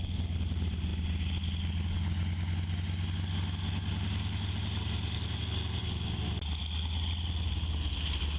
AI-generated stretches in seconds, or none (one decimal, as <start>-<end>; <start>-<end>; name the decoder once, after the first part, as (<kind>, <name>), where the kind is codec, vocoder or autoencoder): none